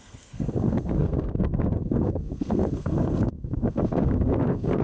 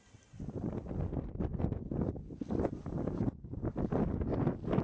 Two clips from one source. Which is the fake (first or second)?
first